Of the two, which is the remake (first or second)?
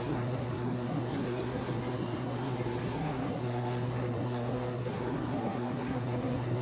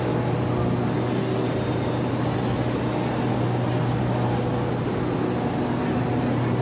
first